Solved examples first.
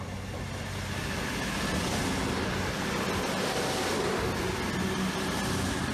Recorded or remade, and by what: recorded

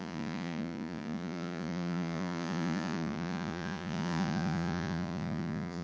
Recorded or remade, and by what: remade, vocoder, Vocos